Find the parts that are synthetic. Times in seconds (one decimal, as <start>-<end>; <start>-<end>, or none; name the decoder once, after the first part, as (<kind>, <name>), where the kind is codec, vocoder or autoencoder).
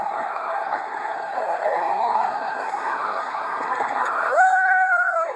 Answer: 0.0-5.4 (codec, SNAC)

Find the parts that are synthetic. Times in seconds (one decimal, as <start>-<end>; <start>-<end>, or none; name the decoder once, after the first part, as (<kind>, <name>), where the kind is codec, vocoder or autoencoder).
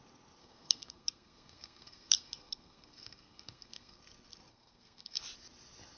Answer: 0.4-4.0 (codec, SNAC); 4.5-5.2